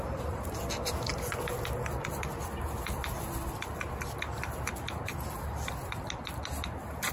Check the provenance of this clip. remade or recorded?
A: recorded